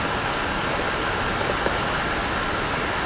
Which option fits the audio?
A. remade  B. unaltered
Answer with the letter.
B